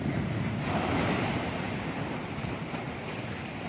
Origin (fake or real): fake